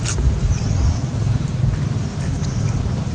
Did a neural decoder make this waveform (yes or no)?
no